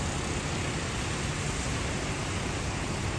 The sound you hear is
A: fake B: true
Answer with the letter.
B